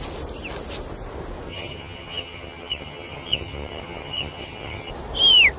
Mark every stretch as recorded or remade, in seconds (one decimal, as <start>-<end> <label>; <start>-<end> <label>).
0.0-1.5 recorded; 1.5-4.9 remade; 4.9-5.6 recorded